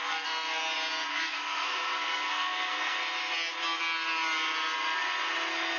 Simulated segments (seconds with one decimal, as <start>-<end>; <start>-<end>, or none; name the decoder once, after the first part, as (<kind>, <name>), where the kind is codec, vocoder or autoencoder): 0.0-0.6 (codec, SNAC); 1.1-3.0